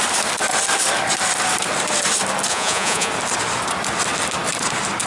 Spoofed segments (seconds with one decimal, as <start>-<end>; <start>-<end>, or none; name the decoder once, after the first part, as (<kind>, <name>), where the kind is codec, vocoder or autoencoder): 2.5-3.1 (vocoder, Vocos)